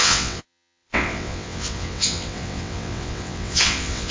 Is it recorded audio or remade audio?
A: remade